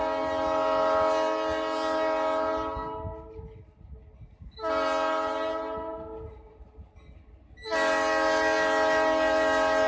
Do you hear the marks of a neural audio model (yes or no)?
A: no